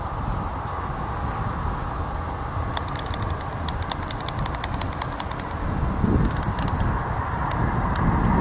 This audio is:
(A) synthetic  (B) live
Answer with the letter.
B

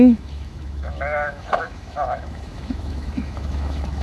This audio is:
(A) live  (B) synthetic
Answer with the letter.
B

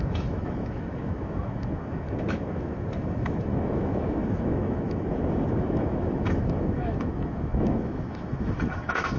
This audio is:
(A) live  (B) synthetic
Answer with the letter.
B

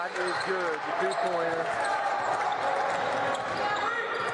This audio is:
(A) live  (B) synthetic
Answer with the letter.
A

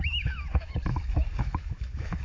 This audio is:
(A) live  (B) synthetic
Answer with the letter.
B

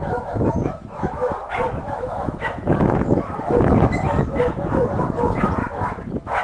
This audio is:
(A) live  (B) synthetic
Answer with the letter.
B